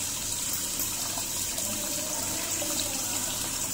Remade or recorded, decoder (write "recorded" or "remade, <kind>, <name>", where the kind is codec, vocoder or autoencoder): remade, vocoder, BigVGAN v2